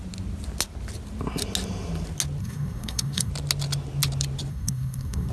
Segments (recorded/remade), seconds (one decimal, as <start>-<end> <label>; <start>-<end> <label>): 0.0-2.4 recorded; 2.4-3.3 remade; 3.3-4.5 recorded; 4.5-5.3 remade